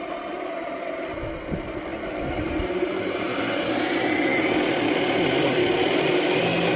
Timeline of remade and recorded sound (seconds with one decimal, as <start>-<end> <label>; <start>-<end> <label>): 0.0-6.8 recorded